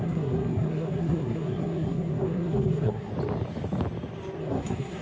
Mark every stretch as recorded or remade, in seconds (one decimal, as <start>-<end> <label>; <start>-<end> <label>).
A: 0.0-3.1 remade; 3.1-4.4 recorded; 4.4-5.0 remade